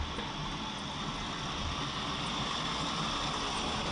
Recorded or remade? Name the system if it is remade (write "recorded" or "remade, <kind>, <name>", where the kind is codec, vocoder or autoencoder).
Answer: recorded